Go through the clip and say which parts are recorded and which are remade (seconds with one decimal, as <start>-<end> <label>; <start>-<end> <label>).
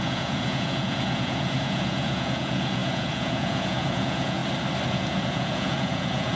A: 0.0-4.4 remade; 4.4-4.9 recorded; 4.9-6.4 remade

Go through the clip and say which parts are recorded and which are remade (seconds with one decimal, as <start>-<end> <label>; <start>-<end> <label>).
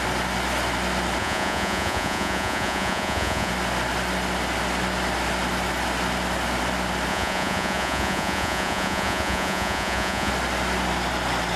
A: 0.0-1.2 recorded; 1.2-3.5 remade; 3.5-7.1 recorded; 7.1-10.3 remade; 10.3-11.6 recorded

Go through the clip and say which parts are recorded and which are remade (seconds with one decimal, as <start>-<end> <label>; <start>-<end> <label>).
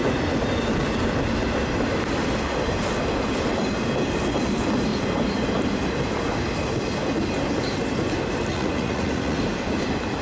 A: 0.0-8.5 recorded; 8.5-9.4 remade; 9.4-10.2 recorded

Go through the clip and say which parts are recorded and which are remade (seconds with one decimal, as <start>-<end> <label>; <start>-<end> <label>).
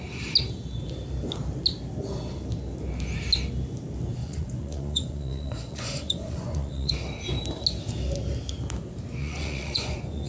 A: 0.0-4.2 recorded; 4.2-6.9 remade; 6.9-9.2 recorded; 9.2-10.3 remade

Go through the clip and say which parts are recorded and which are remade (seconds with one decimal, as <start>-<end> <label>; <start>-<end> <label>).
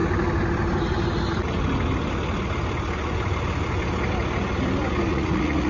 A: 0.0-5.1 recorded; 5.1-5.7 remade